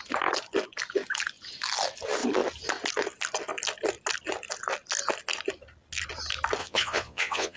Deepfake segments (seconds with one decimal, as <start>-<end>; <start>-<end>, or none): 6.6-7.6